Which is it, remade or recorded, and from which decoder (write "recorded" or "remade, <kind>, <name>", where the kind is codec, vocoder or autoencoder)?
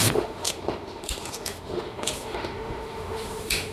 remade, autoencoder, DAC-VAE